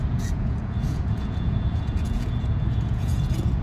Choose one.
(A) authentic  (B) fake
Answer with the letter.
B